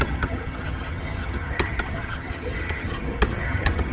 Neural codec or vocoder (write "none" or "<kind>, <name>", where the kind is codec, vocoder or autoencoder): vocoder, HiFi-GAN